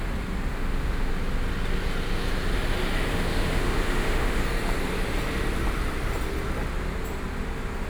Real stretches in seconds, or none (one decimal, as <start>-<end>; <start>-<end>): 0.0-0.5; 1.1-3.1; 4.4-7.9